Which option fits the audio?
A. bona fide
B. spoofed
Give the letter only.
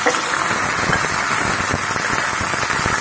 A